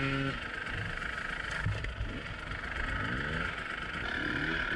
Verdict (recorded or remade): recorded